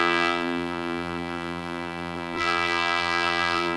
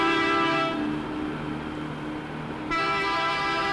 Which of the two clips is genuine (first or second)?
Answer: second